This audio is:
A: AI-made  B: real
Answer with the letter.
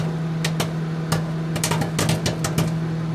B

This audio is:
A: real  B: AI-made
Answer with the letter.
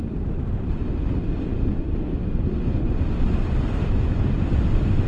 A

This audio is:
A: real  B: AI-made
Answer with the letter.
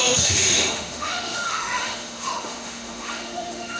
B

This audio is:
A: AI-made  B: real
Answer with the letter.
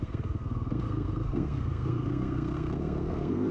A